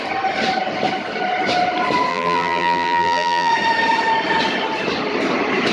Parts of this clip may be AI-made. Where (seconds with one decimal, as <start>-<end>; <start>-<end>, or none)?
2.1-3.5